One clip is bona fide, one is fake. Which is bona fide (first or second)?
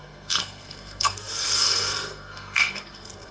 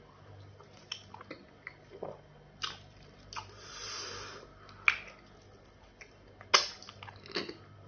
second